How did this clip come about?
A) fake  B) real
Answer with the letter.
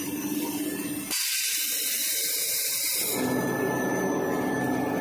B